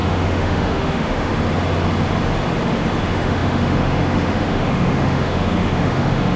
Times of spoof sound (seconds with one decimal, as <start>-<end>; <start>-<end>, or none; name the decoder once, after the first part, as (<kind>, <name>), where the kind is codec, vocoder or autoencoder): 0.0-1.3 (autoencoder, DAC-VAE); 3.0-6.4

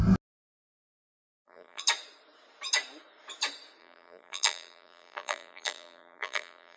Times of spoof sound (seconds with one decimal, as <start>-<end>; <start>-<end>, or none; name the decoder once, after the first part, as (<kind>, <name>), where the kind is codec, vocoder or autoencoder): 1.2-1.8 (vocoder, BigVGAN v2); 3.8-6.8